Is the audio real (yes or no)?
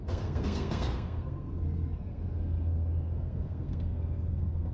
no